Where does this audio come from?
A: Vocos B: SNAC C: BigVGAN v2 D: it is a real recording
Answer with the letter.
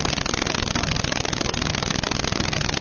D